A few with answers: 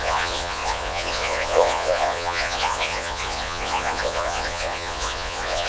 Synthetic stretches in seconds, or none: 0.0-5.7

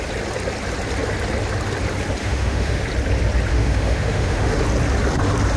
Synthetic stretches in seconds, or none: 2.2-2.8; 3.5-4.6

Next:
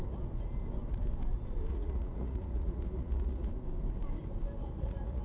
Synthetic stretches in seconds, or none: 1.7-3.5; 4.6-5.2

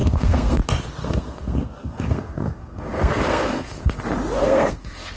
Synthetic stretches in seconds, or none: 0.0-0.6; 1.0-4.0; 4.4-5.2

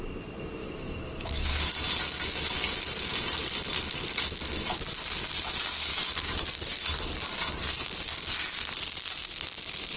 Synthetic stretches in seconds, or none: 0.6-1.7